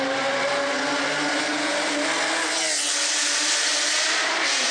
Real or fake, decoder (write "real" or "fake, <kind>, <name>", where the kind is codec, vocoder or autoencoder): real